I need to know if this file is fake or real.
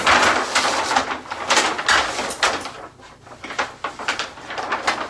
real